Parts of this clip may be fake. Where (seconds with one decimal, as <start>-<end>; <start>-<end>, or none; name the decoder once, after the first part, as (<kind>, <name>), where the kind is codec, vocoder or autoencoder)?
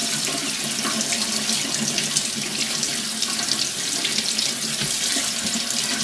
none